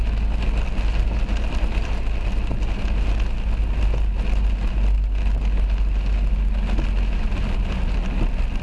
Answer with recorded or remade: recorded